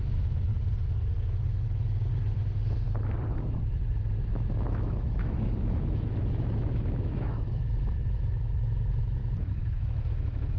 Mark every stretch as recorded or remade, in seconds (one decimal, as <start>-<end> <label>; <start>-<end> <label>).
0.0-0.5 remade; 0.5-4.3 recorded; 4.3-10.6 remade